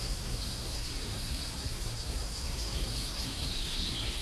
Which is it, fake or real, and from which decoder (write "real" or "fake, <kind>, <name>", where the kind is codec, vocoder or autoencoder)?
fake, codec, SNAC